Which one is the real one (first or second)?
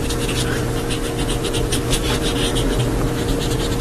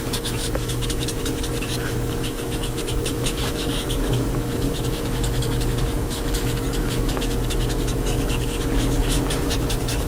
first